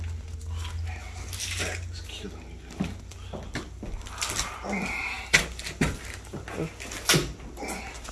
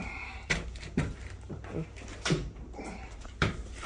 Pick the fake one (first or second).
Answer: second